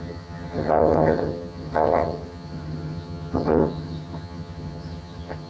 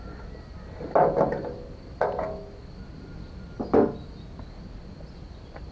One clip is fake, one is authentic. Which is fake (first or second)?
first